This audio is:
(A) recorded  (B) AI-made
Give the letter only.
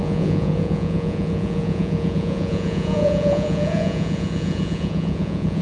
B